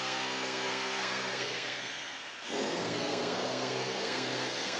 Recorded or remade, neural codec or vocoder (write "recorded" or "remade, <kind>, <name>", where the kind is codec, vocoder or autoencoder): remade, codec, SNAC